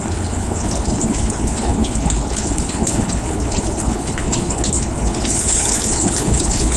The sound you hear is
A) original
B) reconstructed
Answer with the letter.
B